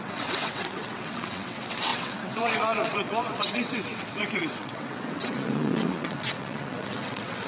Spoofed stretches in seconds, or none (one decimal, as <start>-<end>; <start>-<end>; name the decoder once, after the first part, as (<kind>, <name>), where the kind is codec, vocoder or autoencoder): 0.0-7.5 (vocoder, WaveNeXt)

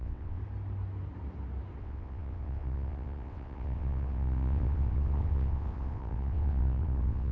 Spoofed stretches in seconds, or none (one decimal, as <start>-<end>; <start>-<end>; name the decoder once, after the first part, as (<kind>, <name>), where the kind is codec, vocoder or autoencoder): 0.0-0.4 (vocoder, WaveNeXt); 1.8-7.3

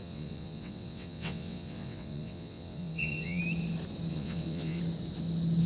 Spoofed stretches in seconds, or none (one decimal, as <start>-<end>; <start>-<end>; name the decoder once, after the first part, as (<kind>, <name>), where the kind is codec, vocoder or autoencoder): 0.0-3.4 (vocoder, WaveNeXt); 4.1-4.8

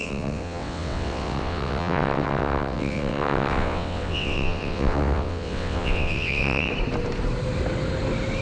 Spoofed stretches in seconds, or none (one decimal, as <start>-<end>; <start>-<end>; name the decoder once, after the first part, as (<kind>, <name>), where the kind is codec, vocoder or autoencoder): 0.0-6.7 (vocoder, WaveNeXt)

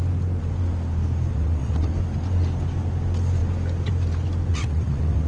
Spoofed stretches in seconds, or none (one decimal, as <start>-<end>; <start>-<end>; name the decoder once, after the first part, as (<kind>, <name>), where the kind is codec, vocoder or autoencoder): 1.3-1.9 (vocoder, WaveNeXt); 4.5-5.3

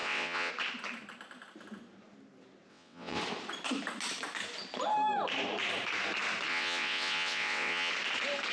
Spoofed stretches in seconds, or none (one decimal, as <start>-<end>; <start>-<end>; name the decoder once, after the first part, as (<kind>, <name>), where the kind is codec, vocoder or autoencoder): 0.0-0.5 (vocoder, WaveNeXt); 2.7-3.2; 6.5-7.9

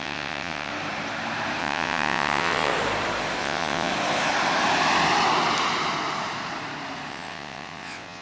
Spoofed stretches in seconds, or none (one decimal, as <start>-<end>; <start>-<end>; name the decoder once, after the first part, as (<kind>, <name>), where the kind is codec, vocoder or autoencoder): 0.0-0.7 (vocoder, WaveNeXt); 1.6-2.7; 3.4-3.9; 7.1-8.2

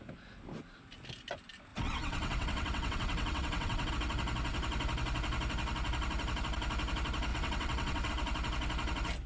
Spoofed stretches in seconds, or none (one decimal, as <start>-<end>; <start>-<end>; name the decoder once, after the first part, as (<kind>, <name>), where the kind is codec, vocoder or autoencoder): 1.7-3.9 (vocoder, WaveNeXt); 7.3-8.1